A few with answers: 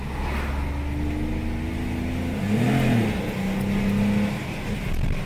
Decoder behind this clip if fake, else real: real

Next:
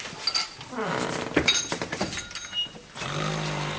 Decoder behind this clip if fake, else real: real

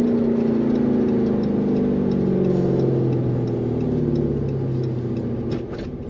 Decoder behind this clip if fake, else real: real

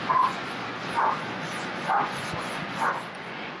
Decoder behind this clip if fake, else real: fake, vocoder, Vocos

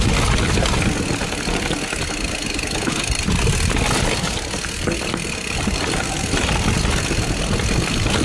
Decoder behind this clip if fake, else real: real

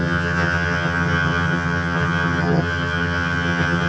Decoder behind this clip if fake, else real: fake, vocoder, HiFi-GAN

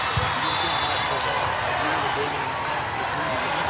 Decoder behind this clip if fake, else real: real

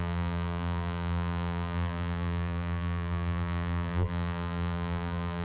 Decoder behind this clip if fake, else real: fake, vocoder, BigVGAN v2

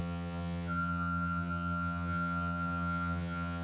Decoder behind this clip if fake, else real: fake, vocoder, HiFi-GAN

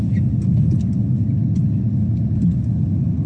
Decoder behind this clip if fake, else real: real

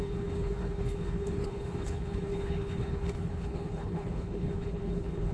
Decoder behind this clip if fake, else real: fake, codec, HILCodec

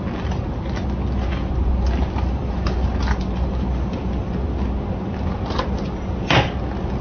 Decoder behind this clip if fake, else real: real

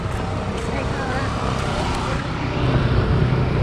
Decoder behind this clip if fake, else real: fake, vocoder, BigVGAN v2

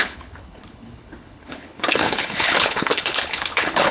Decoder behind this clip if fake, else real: fake, codec, HILCodec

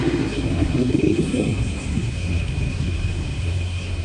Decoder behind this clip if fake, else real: fake, codec, SNAC